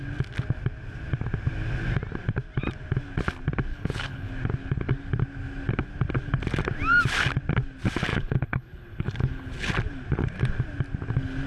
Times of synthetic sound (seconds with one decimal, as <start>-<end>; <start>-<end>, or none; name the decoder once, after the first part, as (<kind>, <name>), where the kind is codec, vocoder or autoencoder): 3.7-4.3 (codec, HILCodec); 8.1-9.7